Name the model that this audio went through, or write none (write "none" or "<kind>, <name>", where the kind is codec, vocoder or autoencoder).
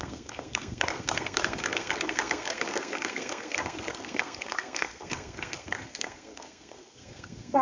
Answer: codec, SNAC